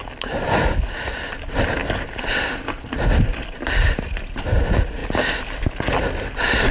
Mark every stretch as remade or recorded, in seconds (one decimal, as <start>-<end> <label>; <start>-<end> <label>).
0.0-1.8 recorded; 1.8-3.4 remade; 3.4-6.7 recorded